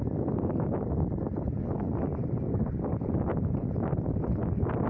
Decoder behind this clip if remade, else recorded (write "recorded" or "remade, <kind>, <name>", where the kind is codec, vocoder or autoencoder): recorded